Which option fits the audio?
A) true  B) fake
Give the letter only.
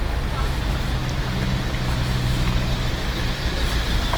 A